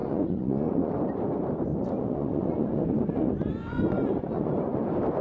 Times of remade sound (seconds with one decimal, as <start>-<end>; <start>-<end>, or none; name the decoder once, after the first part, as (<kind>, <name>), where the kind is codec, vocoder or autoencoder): 0.0-0.9 (vocoder, Vocos); 1.7-4.8